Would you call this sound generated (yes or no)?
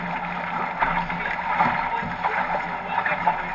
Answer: no